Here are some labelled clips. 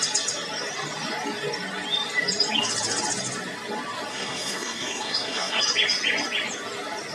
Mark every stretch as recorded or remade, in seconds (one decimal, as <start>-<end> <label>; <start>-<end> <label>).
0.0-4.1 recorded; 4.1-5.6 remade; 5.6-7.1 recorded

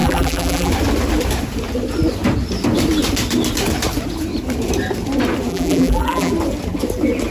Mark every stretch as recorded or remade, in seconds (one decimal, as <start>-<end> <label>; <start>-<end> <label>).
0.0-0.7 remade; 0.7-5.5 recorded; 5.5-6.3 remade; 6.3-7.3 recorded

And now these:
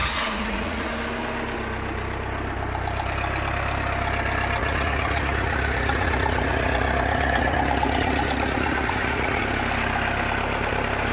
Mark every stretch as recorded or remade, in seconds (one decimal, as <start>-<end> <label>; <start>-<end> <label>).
0.0-0.9 remade; 0.9-4.6 recorded; 4.6-9.4 remade; 9.4-11.1 recorded